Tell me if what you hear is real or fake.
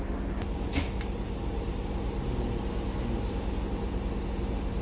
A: real